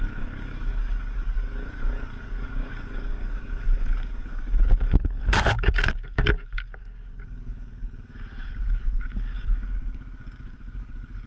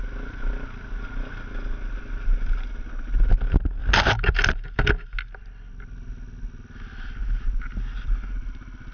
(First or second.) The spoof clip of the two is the first